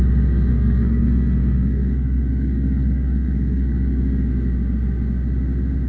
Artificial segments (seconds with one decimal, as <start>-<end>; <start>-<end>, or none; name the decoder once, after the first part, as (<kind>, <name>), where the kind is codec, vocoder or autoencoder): 0.5-4.0 (codec, SNAC)